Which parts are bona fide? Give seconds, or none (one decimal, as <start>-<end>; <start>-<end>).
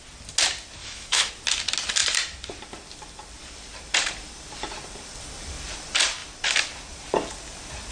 0.0-0.8; 1.3-7.9